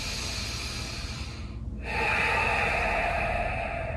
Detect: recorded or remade recorded